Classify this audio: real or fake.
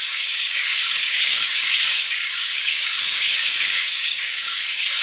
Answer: fake